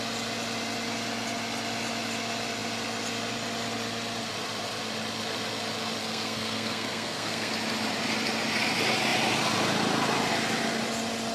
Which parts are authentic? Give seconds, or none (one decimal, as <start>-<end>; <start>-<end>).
0.0-6.0; 7.5-11.3